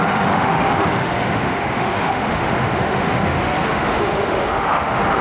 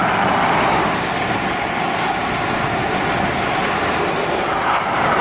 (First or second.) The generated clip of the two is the first